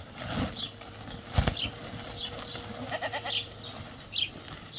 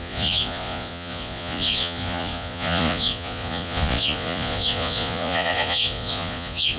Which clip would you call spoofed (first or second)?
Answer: second